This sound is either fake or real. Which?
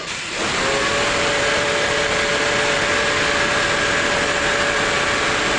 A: real